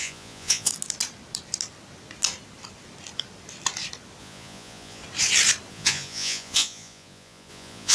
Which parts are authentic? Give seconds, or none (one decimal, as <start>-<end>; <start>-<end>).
0.7-4.2; 5.0-5.7